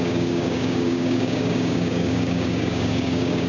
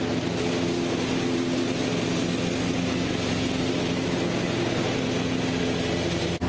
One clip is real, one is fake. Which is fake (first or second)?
first